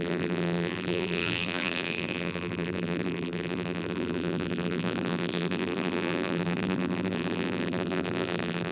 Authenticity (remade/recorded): remade